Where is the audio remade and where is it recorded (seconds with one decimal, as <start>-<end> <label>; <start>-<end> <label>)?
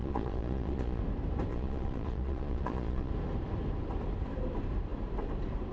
0.0-1.0 remade; 1.0-1.5 recorded; 1.5-3.1 remade; 3.1-5.7 recorded